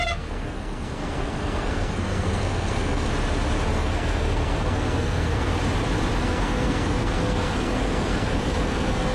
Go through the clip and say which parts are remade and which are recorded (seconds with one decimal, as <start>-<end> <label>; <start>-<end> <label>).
0.0-3.1 remade; 3.1-3.7 recorded; 3.7-5.5 remade; 5.5-6.2 recorded; 6.2-9.1 remade

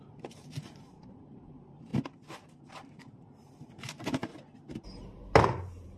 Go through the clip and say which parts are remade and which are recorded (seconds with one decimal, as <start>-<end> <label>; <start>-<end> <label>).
0.0-1.9 remade; 1.9-2.7 recorded; 2.7-4.3 remade; 4.3-5.4 recorded; 5.4-6.0 remade

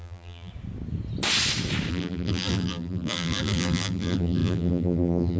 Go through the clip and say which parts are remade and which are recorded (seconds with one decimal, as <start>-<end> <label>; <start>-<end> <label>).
0.0-0.5 remade; 0.5-1.9 recorded; 1.9-5.4 remade

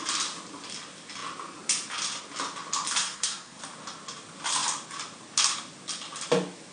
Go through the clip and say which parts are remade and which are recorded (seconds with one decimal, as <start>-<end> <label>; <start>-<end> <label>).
0.0-3.0 recorded; 3.0-3.6 remade; 3.6-6.7 recorded